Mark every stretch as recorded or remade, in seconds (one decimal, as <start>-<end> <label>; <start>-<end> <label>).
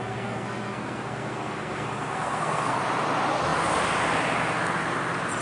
0.0-2.8 remade; 2.8-5.4 recorded